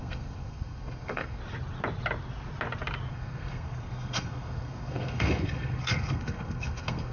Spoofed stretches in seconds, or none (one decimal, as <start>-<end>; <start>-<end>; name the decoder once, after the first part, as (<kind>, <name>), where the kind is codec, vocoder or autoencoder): 0.0-1.4 (codec, SNAC); 3.1-7.1